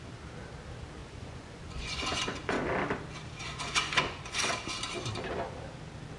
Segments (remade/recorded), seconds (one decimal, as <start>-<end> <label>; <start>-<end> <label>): 0.0-1.0 recorded; 1.0-2.6 remade; 2.6-3.4 recorded; 3.4-4.5 remade; 4.5-6.2 recorded